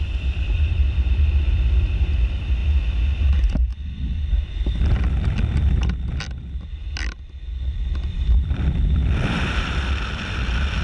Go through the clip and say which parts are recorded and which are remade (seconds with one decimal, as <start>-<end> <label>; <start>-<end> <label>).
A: 0.0-2.6 remade; 2.6-3.3 recorded; 3.3-3.7 remade; 3.7-8.1 recorded; 8.1-10.8 remade